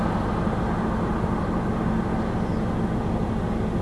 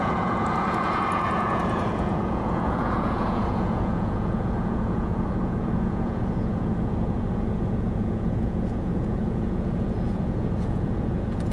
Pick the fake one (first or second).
second